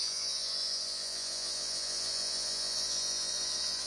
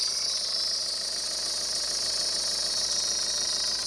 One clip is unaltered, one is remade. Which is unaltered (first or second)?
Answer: second